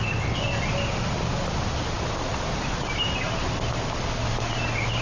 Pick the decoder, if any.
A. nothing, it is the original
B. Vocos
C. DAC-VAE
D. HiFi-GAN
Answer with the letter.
A